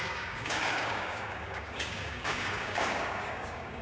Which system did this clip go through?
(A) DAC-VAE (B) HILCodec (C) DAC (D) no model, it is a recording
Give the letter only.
C